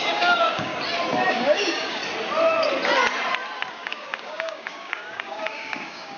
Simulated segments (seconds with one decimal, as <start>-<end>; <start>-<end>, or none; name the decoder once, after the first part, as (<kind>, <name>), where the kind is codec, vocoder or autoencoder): 0.0-0.7 (codec, DAC); 1.3-2.0; 3.7-6.2